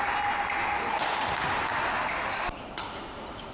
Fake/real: real